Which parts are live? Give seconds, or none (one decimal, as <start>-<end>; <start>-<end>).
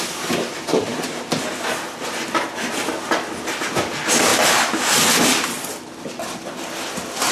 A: 0.9-1.6; 4.3-5.8